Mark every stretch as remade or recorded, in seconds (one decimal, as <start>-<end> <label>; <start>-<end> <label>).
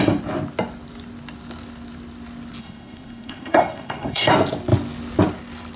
0.0-2.6 recorded; 2.6-4.3 remade; 4.3-5.8 recorded